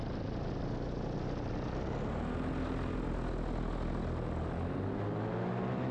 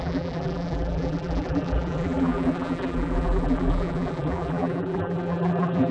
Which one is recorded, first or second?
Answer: first